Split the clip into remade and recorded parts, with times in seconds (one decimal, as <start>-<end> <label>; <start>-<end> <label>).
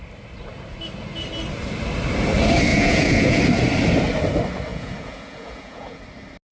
0.0-2.7 recorded; 2.7-3.4 remade; 3.4-4.7 recorded; 4.7-6.0 remade; 6.0-6.5 recorded